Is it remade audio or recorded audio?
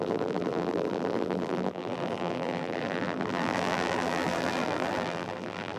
remade